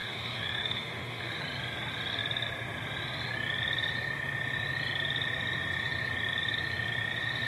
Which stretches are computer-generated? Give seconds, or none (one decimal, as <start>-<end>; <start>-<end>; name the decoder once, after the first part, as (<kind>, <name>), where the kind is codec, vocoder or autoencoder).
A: 0.0-1.4 (autoencoder, DAC-VAE)